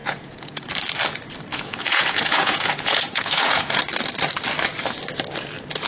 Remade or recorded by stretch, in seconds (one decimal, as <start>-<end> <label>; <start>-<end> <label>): 0.0-0.7 remade; 0.7-1.5 recorded; 1.5-3.8 remade; 3.8-5.9 recorded